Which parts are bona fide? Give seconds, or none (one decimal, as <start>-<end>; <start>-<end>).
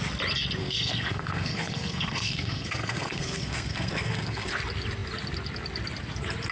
0.0-0.6; 4.5-6.5